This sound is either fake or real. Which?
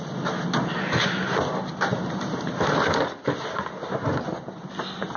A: real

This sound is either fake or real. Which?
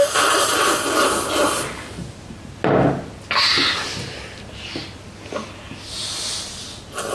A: real